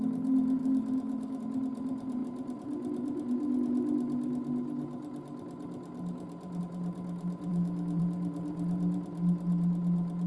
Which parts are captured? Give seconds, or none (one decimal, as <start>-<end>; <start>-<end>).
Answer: 0.0-0.6; 1.4-7.5; 8.0-10.3